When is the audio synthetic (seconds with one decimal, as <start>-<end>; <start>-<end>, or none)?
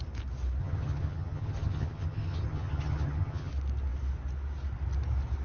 0.6-3.5